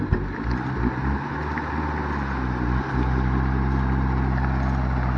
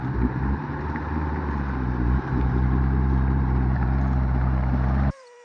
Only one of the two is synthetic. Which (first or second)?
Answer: second